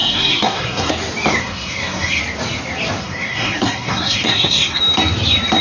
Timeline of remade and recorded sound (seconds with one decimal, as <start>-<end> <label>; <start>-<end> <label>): 0.0-0.9 remade; 0.9-1.4 recorded; 1.4-2.2 remade; 2.2-3.0 recorded; 3.0-4.8 remade; 4.8-5.6 recorded